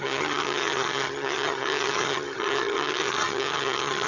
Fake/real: fake